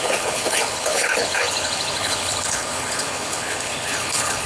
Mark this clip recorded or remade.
remade